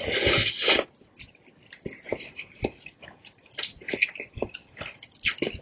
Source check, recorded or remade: recorded